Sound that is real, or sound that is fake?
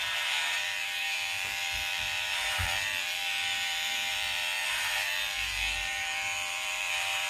fake